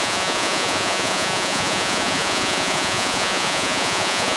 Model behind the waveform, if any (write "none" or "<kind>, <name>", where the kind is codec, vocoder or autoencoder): vocoder, Vocos